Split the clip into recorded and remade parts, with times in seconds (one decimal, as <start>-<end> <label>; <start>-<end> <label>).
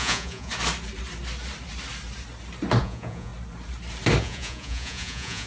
0.0-0.5 remade; 0.5-2.8 recorded; 2.8-3.3 remade; 3.3-4.2 recorded; 4.2-5.5 remade